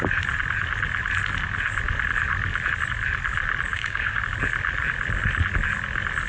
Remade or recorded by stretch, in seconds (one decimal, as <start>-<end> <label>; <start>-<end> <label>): 0.0-3.7 recorded; 3.7-4.2 remade; 4.2-6.3 recorded